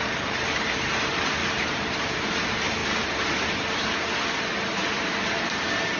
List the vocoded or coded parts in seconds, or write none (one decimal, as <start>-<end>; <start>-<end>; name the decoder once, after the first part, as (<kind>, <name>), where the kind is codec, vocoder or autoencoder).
1.4-2.1 (vocoder, BigVGAN v2); 4.7-5.6